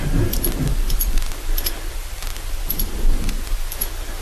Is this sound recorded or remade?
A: remade